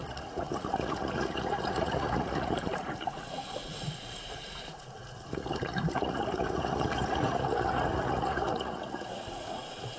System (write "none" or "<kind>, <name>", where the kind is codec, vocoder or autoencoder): vocoder, Vocos